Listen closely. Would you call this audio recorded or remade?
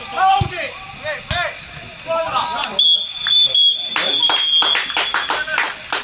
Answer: recorded